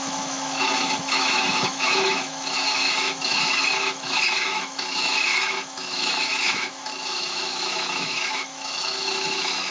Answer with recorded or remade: remade